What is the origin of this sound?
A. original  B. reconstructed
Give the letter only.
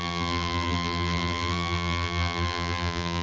B